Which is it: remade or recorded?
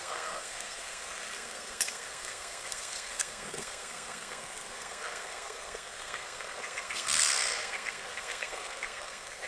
remade